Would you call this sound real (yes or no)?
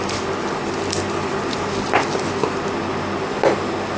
yes